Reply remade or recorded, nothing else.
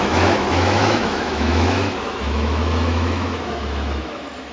remade